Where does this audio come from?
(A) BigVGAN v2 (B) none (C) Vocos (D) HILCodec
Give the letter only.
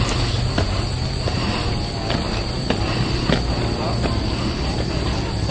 B